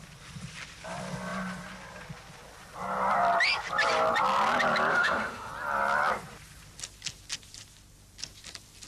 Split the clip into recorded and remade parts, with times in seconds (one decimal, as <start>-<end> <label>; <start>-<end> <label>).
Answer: 0.0-4.9 recorded; 4.9-5.5 remade; 5.5-8.9 recorded